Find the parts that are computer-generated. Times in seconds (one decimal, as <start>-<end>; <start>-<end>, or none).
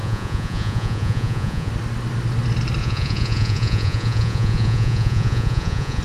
0.0-1.7; 2.8-6.0